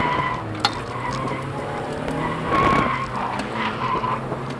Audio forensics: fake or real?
real